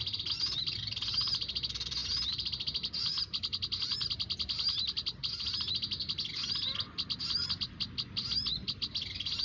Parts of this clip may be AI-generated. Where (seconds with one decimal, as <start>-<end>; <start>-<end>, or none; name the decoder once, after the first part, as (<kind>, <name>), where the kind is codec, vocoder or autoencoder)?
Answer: none